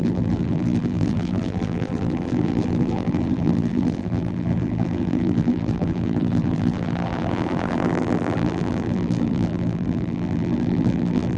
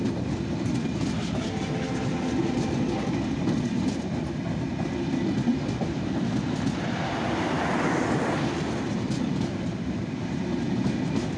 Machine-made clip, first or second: first